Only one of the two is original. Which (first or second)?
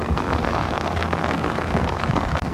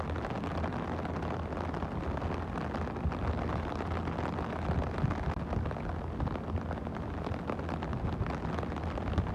second